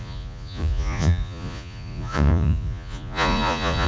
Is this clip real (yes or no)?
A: no